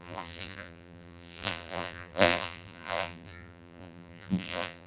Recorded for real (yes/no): no